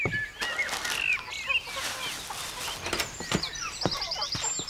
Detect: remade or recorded recorded